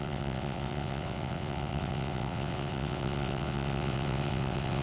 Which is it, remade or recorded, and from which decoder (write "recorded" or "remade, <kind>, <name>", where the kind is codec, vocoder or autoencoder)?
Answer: remade, vocoder, WaveNeXt